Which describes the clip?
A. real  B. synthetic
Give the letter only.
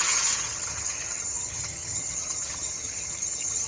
B